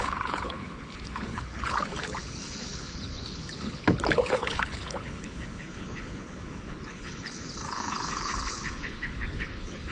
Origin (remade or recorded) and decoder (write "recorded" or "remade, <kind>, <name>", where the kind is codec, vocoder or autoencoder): remade, codec, HILCodec